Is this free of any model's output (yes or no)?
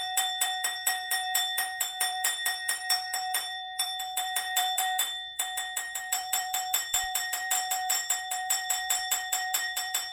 no